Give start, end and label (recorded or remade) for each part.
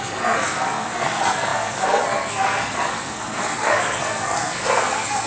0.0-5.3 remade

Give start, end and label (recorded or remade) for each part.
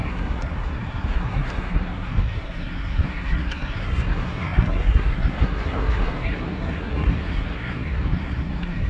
0.0-8.9 remade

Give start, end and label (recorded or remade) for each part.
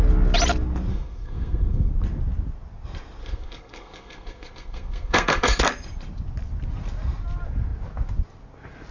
0.0-0.9 recorded; 0.9-1.9 remade; 1.9-3.2 recorded; 3.2-5.6 remade; 5.6-8.9 recorded